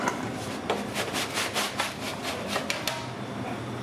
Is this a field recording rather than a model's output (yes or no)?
no